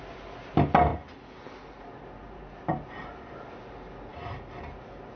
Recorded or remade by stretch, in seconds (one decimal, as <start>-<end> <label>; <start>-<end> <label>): 0.0-5.2 recorded